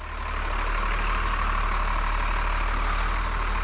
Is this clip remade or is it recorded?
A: recorded